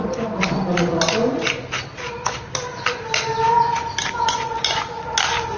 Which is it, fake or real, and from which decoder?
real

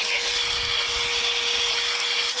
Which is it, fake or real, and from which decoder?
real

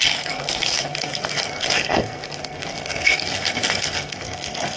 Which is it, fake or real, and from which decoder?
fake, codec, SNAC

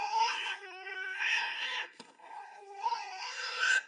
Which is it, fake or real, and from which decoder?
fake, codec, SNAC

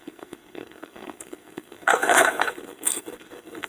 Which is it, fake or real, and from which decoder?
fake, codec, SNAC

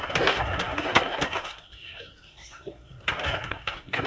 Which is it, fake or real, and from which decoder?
fake, codec, SNAC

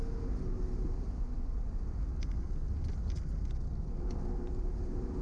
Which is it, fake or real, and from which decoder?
real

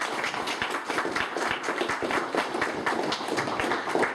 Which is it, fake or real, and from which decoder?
real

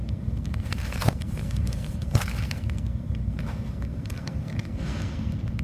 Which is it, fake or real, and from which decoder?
fake, codec, SNAC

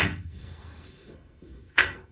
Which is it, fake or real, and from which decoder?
fake, codec, SNAC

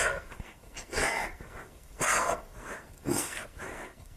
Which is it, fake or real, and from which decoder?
fake, codec, SNAC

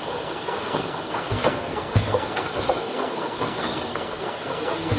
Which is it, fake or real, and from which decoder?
fake, codec, SNAC